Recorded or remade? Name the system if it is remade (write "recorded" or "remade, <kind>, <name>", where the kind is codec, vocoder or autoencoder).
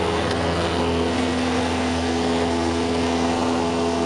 remade, codec, SNAC